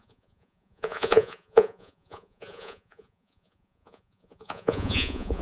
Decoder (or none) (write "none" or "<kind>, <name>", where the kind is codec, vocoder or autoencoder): vocoder, Vocos